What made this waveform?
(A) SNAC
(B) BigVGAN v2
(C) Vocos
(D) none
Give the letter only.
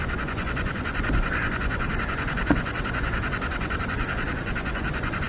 C